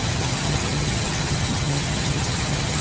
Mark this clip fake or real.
fake